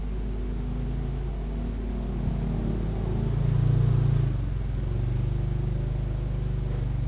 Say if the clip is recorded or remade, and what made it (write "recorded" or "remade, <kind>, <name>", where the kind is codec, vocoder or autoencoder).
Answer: recorded